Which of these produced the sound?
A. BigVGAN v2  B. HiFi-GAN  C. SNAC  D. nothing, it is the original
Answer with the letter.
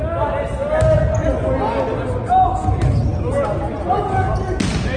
D